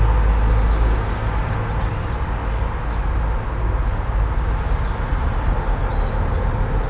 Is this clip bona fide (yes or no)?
yes